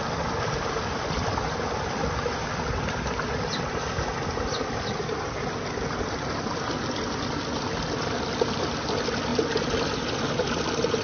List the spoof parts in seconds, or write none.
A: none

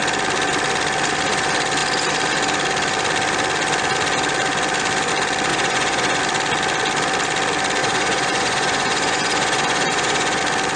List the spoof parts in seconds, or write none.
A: 5.5-6.2 (vocoder, Vocos); 7.8-10.4

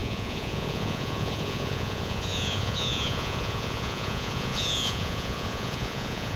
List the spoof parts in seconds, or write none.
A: 0.0-6.4 (vocoder, Vocos)

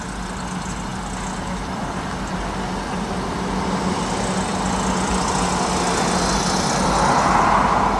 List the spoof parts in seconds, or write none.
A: none

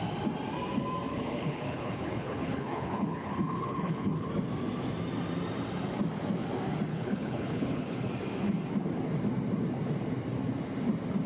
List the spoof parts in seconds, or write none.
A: 1.1-4.3 (codec, HILCodec); 6.9-8.1

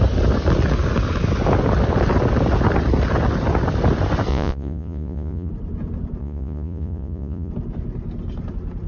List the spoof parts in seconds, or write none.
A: 4.3-5.5 (vocoder, Vocos); 6.2-7.5

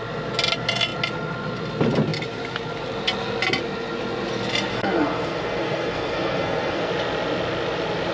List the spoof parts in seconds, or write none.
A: 4.7-6.9 (codec, SNAC)

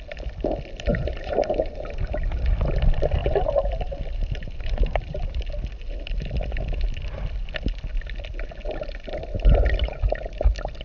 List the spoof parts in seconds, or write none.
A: 0.9-2.2 (vocoder, BigVGAN v2); 3.2-5.5